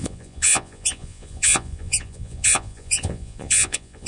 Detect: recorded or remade remade